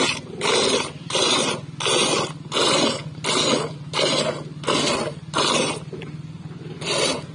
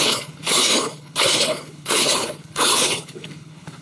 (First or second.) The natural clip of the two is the first